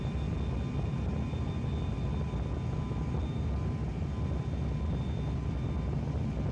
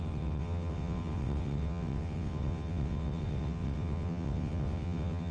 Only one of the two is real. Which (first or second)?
first